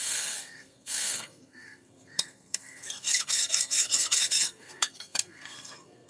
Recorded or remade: remade